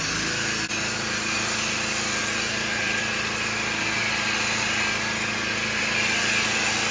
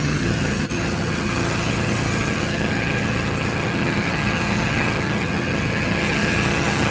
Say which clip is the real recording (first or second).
first